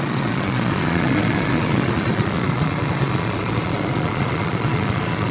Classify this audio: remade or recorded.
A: remade